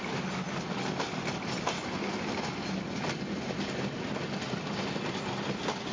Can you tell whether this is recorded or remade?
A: recorded